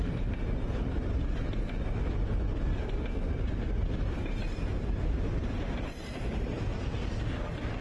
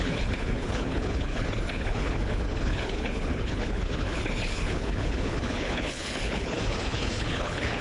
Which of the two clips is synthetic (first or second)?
second